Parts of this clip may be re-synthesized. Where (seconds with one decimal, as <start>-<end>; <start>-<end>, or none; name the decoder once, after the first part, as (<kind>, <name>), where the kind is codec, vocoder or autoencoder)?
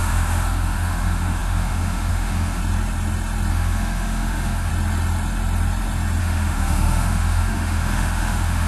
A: 0.0-2.6 (autoencoder, DAC-VAE); 3.5-4.7; 6.2-8.7